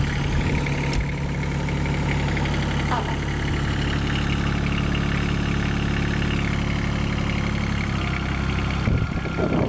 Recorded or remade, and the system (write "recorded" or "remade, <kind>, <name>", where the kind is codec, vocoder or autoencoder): recorded